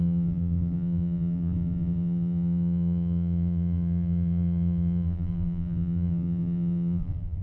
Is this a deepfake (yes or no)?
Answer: yes